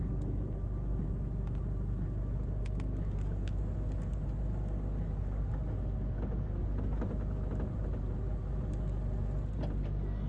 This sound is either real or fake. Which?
real